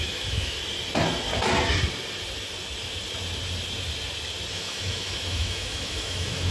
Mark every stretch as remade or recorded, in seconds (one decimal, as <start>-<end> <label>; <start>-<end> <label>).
0.0-0.6 remade; 0.6-4.5 recorded; 4.5-6.5 remade